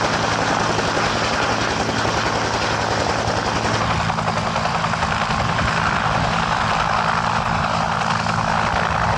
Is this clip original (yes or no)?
yes